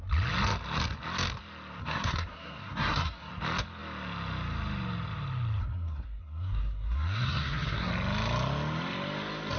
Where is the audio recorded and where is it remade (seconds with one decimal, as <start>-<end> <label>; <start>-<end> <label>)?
0.0-1.8 recorded; 1.8-3.3 remade; 3.3-5.6 recorded; 5.6-7.9 remade; 7.9-9.6 recorded